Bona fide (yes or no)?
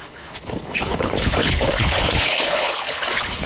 no